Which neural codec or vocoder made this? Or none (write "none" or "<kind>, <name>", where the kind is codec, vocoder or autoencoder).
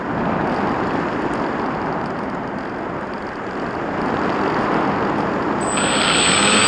none